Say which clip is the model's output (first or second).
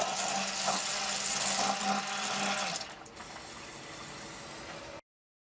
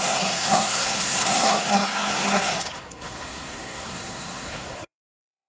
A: second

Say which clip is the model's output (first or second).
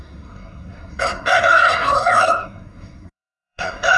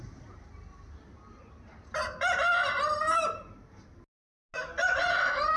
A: first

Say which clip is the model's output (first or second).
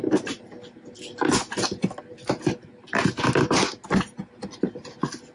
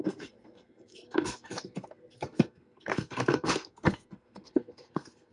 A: second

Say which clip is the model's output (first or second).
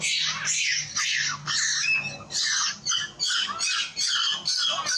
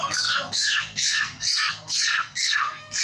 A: second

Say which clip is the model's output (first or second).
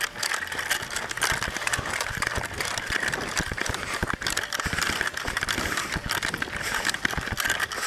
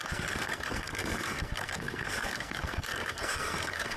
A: second